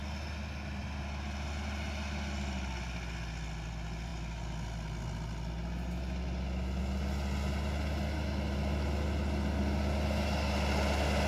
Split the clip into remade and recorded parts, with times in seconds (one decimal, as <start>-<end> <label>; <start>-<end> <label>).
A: 0.0-11.3 recorded